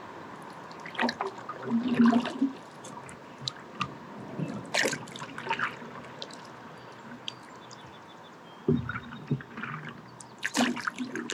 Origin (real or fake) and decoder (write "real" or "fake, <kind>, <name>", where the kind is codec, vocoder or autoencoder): real